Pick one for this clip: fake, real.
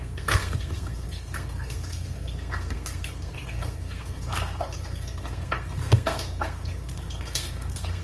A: fake